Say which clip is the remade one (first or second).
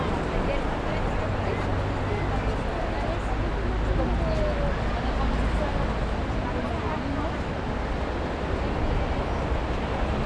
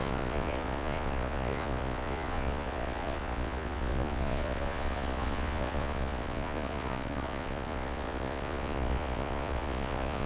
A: second